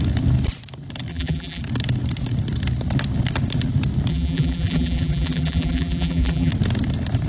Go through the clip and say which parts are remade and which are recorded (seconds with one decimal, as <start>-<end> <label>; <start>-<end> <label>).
0.0-1.1 recorded; 1.1-1.6 remade; 1.6-4.1 recorded; 4.1-6.5 remade; 6.5-7.3 recorded